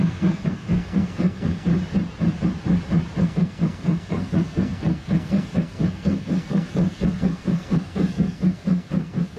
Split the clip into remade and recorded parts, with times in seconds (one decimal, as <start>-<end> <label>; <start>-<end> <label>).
0.0-1.7 remade; 1.7-3.2 recorded; 3.2-9.4 remade